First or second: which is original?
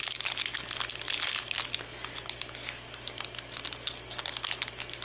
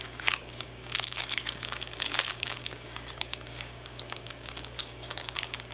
first